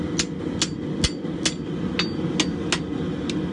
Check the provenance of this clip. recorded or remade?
recorded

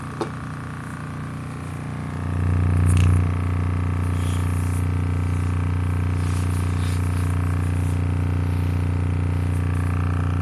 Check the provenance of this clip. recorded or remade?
recorded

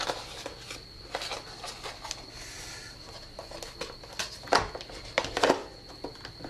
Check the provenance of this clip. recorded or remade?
recorded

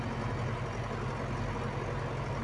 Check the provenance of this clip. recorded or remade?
recorded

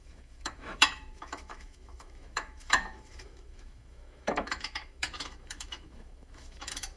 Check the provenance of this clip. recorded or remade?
remade